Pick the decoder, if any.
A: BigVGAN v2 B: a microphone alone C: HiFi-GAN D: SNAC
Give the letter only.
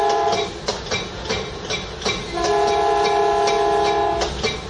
B